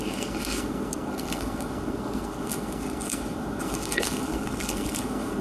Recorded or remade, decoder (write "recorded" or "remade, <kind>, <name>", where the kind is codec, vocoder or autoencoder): remade, codec, SNAC